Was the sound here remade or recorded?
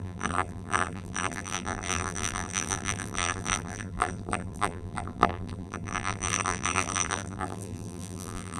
remade